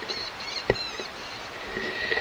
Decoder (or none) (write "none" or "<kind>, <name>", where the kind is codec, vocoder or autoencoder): none